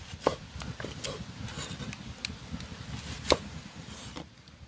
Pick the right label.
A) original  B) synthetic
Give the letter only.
A